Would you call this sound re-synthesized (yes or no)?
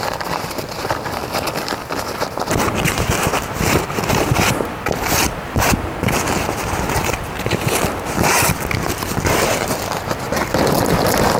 yes